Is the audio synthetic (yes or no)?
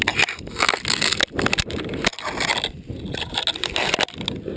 no